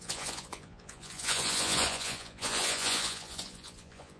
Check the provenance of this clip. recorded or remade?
remade